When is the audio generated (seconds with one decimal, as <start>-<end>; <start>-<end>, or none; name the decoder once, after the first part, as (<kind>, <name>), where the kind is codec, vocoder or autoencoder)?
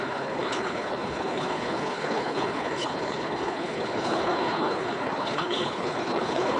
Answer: 0.0-6.6 (codec, HILCodec)